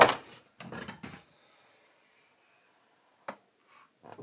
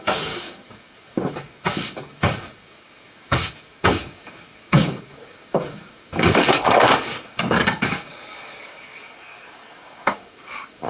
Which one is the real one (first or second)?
first